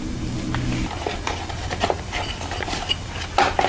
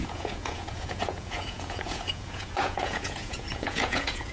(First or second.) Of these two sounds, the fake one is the second